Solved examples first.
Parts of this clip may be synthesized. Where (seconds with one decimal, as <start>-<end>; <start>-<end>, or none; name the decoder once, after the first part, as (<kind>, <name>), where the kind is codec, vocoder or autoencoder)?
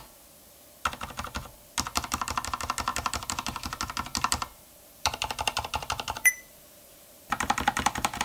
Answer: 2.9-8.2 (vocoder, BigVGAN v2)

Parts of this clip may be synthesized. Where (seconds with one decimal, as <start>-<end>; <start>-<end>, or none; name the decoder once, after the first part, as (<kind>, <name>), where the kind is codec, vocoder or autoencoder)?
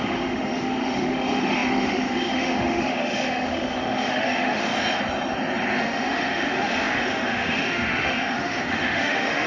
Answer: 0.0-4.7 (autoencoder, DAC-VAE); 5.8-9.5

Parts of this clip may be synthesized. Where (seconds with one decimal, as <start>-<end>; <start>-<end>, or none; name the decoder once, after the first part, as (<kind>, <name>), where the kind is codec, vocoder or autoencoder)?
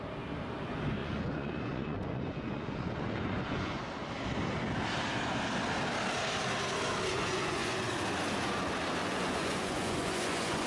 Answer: 1.0-3.8 (vocoder, Vocos); 7.1-7.9; 9.0-10.7